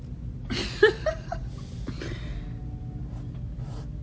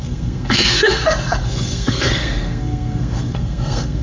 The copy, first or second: second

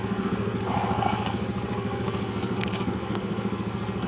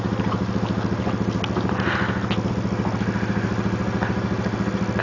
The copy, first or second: first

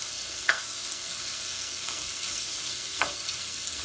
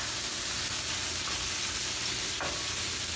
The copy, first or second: first